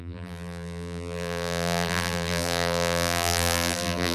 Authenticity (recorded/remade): remade